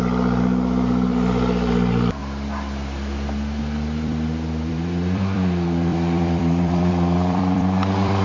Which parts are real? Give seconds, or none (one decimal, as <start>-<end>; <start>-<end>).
2.2-3.6